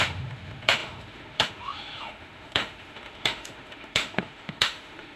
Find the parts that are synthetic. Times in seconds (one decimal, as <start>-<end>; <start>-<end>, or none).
0.0-5.2